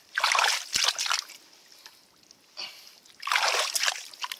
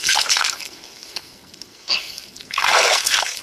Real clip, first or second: first